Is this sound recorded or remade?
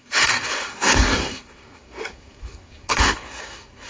remade